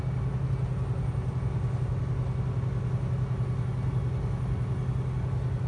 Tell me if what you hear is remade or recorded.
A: recorded